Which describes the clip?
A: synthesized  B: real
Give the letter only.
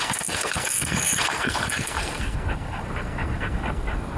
A